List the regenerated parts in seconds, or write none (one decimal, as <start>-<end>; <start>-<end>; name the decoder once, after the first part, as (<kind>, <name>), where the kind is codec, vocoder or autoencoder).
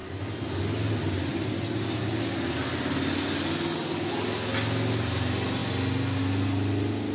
none